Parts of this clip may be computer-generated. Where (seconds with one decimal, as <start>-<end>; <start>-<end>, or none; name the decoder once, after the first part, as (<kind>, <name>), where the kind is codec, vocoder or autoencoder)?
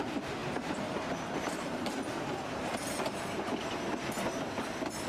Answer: 0.4-3.5 (vocoder, BigVGAN v2)